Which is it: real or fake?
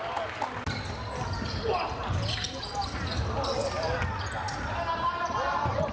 real